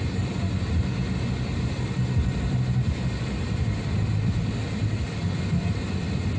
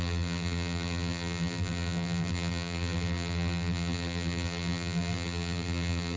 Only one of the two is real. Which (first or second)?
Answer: first